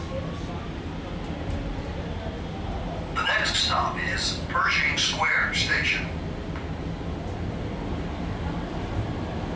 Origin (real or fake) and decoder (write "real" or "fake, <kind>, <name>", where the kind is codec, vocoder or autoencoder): real